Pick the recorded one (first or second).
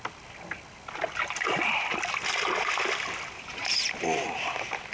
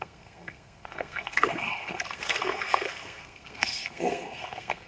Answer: first